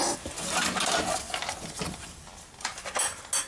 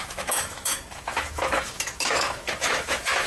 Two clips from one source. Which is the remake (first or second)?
second